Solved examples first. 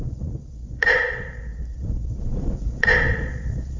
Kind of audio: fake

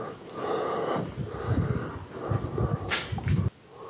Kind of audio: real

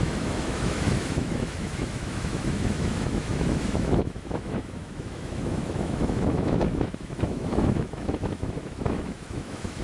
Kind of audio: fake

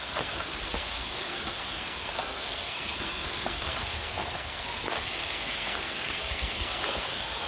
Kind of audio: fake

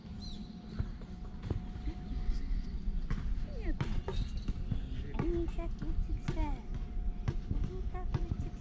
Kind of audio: real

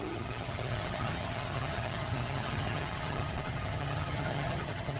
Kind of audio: fake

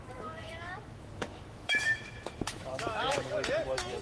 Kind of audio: fake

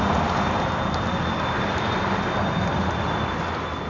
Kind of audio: real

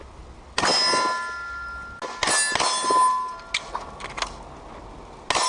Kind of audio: real